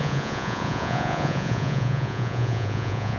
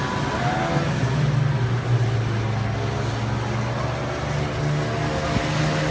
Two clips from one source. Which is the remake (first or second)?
first